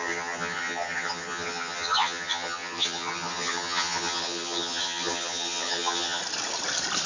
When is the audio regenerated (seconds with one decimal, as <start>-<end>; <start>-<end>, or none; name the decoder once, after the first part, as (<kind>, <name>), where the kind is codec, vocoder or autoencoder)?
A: 0.0-6.2 (vocoder, HiFi-GAN)